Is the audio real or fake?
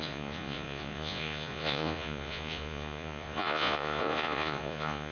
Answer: fake